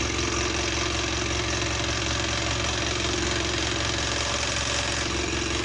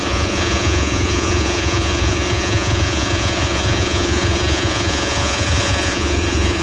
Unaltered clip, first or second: first